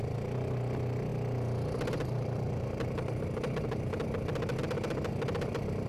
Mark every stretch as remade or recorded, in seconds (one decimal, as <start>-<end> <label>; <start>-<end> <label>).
0.0-5.9 recorded